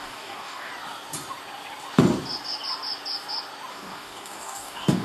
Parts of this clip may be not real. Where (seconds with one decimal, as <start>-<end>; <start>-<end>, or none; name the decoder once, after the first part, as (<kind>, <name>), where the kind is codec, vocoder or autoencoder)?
0.0-0.7 (codec, DAC); 3.7-5.0